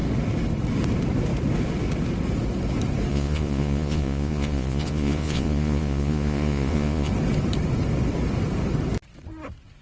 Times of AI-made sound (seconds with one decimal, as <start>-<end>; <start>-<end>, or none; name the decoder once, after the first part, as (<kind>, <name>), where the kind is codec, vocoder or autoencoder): 3.1-7.1 (vocoder, Vocos)